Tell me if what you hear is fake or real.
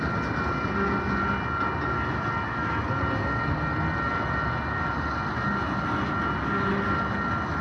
real